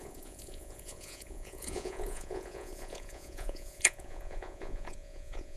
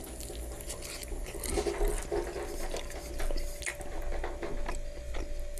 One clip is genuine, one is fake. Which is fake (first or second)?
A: first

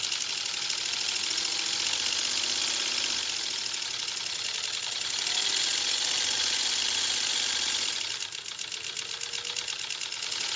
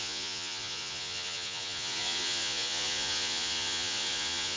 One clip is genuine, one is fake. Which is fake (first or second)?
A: second